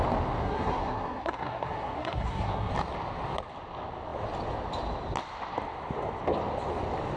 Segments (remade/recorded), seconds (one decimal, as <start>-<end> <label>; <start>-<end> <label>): 0.0-0.4 recorded; 0.4-2.7 remade; 2.7-7.2 recorded